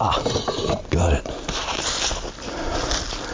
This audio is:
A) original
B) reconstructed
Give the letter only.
A